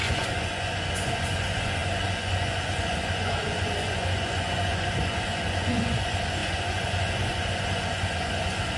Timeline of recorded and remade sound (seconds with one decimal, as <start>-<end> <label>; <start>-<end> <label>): 0.0-8.8 remade